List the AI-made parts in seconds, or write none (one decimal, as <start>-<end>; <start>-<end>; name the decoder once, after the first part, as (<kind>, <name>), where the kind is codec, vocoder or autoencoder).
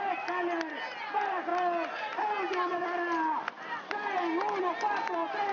none